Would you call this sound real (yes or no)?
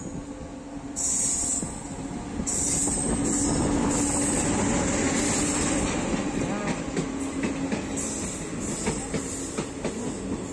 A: yes